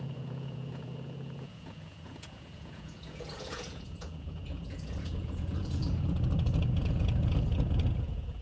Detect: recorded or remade remade